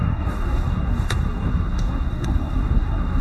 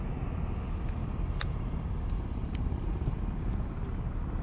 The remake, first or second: first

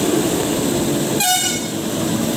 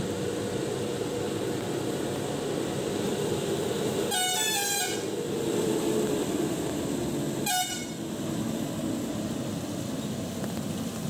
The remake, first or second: first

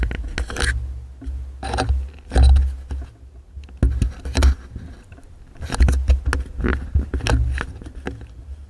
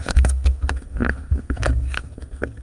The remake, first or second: second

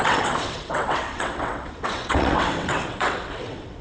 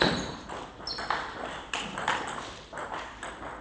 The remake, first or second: first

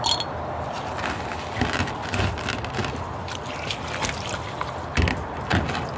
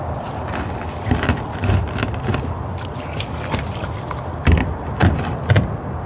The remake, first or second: second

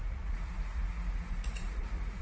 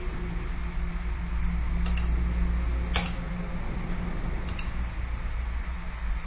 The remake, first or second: first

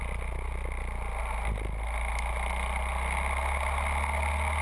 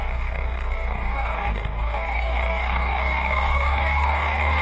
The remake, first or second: second